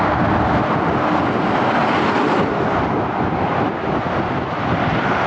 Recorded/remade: recorded